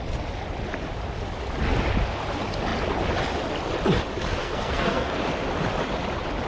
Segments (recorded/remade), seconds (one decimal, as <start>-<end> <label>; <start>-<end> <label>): 0.0-4.4 recorded; 4.4-5.2 remade; 5.2-6.5 recorded